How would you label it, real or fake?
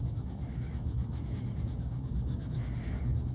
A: fake